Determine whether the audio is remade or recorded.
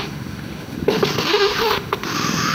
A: remade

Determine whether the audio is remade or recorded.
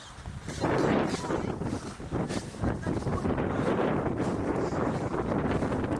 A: recorded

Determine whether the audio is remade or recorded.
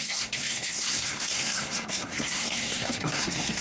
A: remade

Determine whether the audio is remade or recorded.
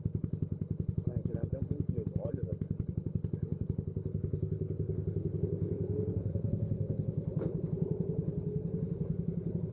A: remade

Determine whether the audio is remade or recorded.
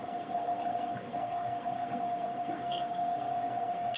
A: remade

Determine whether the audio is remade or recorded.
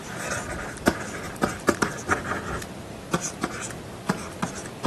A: remade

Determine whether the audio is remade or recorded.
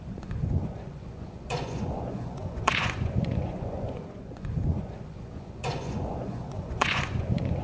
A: remade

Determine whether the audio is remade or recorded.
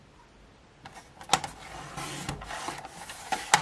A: recorded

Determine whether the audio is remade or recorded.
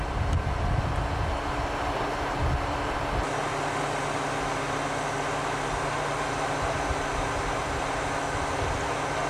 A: recorded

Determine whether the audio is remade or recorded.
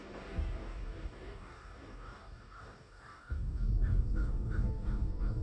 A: remade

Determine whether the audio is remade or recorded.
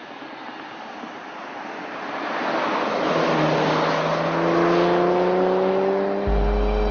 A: recorded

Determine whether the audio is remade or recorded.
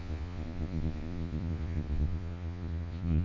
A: remade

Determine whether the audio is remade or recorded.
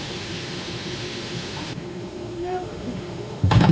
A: remade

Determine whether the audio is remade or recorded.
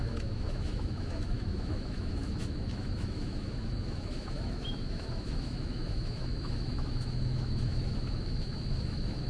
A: remade